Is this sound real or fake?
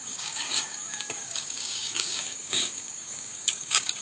fake